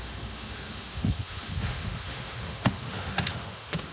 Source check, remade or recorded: remade